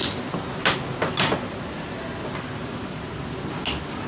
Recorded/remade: recorded